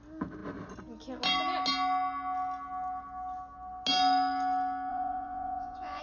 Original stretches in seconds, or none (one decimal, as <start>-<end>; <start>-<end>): 0.0-4.9